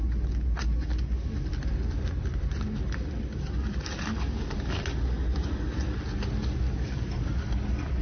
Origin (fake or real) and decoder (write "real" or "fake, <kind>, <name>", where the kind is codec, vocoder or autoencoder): real